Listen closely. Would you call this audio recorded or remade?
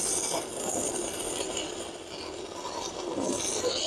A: recorded